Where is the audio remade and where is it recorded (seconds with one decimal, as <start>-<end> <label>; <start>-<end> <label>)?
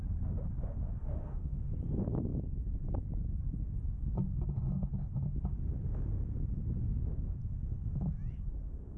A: 0.0-1.0 recorded; 1.0-1.7 remade; 1.7-9.0 recorded